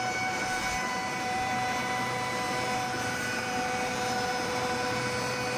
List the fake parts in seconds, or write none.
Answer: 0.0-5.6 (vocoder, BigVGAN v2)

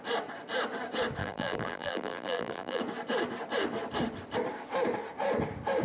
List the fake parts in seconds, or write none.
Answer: 1.2-2.8 (vocoder, BigVGAN v2)